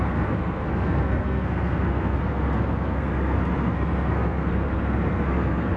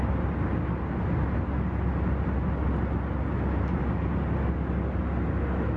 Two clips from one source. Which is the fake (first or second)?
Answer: first